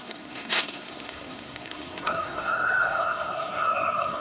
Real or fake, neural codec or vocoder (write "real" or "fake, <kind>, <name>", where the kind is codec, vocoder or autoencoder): fake, codec, SNAC